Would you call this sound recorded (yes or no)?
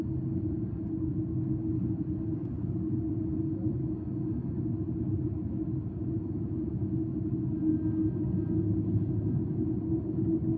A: yes